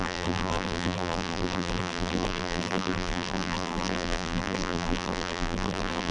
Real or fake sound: fake